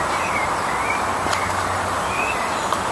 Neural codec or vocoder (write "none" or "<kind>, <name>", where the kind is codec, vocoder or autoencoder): none